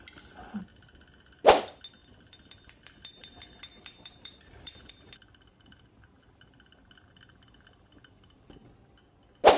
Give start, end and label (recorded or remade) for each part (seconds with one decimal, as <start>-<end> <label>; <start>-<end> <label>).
0.0-0.7 recorded; 0.7-1.6 remade; 1.6-2.0 recorded; 2.0-4.9 remade; 4.9-9.6 recorded